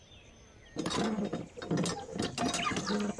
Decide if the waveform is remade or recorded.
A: recorded